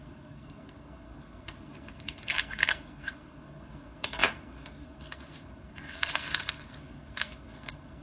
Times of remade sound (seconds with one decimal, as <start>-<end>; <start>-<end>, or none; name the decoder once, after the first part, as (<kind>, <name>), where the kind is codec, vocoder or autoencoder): 0.0-8.0 (codec, SNAC)

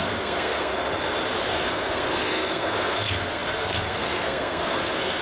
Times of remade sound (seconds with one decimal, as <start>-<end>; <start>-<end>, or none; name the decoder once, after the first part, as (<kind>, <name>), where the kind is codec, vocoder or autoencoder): 0.0-0.7 (codec, SNAC); 1.5-5.2

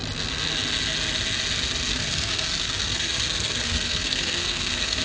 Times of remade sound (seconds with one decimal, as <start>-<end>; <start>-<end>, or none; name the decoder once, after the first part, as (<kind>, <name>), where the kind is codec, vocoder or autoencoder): 1.9-5.0 (codec, SNAC)

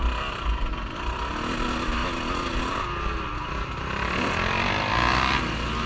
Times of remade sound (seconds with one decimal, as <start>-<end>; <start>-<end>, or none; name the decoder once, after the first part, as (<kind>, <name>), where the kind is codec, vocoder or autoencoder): none

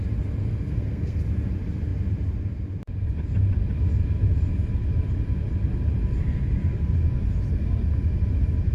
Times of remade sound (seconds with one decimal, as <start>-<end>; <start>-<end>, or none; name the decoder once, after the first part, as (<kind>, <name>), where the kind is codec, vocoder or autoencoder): 0.4-1.2 (codec, SNAC)

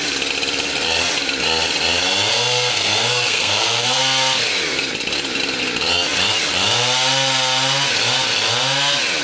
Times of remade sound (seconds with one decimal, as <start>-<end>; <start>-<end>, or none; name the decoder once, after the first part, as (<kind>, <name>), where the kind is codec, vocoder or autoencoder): 2.3-4.0 (codec, SNAC)

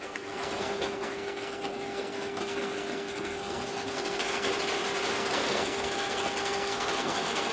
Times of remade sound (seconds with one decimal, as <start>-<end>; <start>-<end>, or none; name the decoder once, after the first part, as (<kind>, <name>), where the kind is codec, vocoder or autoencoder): 0.0-4.5 (codec, SNAC); 5.1-7.5